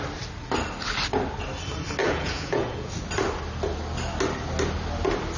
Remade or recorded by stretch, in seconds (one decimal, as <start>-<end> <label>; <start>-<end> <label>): 0.0-2.0 recorded; 2.0-2.9 remade; 2.9-5.4 recorded